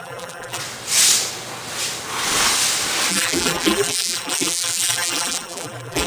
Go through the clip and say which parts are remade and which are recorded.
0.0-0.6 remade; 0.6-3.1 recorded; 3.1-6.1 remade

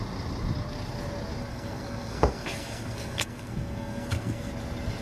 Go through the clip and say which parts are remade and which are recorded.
0.0-1.5 recorded; 1.5-4.5 remade; 4.5-5.0 recorded

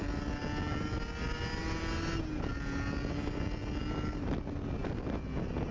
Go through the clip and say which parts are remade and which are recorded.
0.0-5.7 recorded